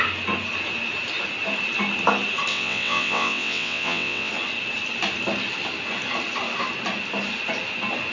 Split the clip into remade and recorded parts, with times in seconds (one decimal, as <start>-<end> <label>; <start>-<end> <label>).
0.0-2.5 recorded; 2.5-4.3 remade; 4.3-8.1 recorded

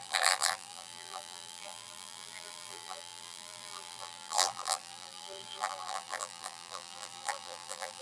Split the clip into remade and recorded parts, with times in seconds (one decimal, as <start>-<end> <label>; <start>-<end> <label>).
0.0-8.0 remade

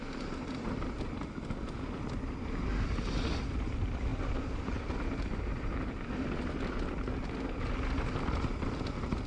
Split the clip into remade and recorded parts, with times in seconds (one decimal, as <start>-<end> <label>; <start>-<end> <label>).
0.0-4.1 recorded; 4.1-4.8 remade; 4.8-9.3 recorded

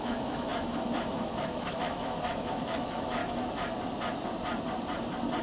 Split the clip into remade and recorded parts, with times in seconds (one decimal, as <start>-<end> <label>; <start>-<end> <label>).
0.0-3.2 remade; 3.2-5.4 recorded

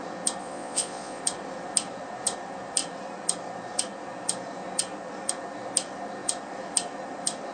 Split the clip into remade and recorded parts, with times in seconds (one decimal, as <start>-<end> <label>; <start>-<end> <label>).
0.0-0.4 recorded; 0.4-1.2 remade; 1.2-7.5 recorded